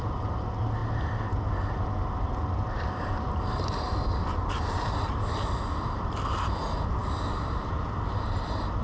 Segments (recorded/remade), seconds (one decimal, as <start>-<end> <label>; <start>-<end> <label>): 0.0-8.8 recorded